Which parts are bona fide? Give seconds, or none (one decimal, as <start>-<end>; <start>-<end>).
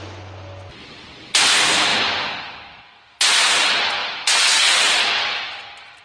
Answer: 0.0-0.7; 1.3-4.0